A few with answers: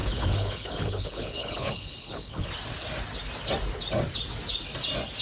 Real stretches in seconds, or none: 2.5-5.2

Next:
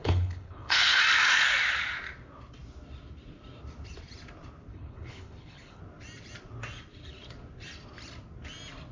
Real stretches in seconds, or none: 1.0-4.7; 5.8-8.9

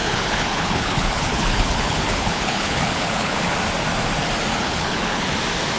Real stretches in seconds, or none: 3.5-4.5; 5.2-5.8

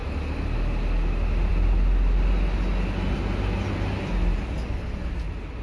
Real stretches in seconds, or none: 0.0-5.6

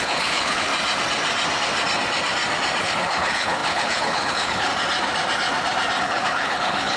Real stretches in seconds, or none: 0.7-2.8; 4.7-6.0

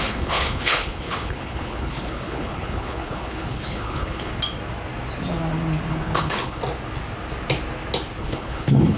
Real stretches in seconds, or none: 4.3-5.9; 6.6-8.2

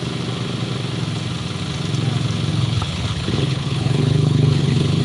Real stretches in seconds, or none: 0.0-2.5

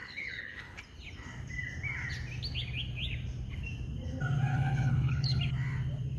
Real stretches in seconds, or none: 0.8-4.5; 5.4-6.2